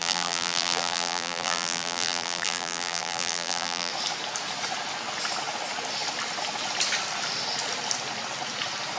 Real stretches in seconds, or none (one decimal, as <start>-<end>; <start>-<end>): 3.9-9.0